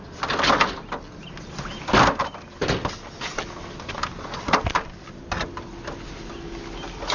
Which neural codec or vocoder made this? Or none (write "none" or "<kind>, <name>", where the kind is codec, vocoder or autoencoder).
none